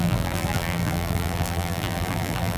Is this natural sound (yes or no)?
no